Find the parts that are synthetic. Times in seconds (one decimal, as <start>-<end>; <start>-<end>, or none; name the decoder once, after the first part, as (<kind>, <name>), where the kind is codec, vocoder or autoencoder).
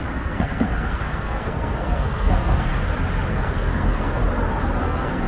0.0-2.7 (codec, SNAC); 3.3-4.2; 4.8-5.3